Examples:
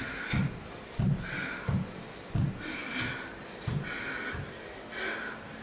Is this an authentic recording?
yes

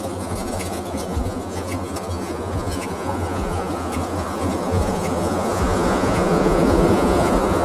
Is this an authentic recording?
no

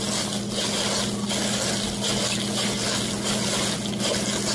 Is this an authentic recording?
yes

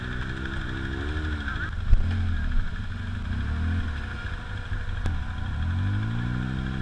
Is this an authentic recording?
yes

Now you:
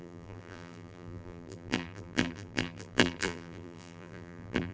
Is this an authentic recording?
no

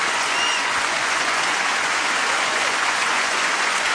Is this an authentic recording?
no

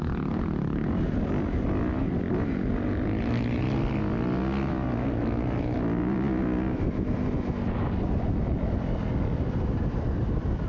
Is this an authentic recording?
yes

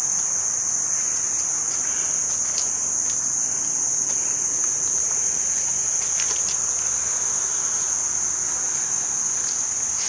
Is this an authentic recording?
yes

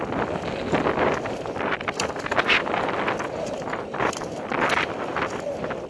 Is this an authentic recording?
yes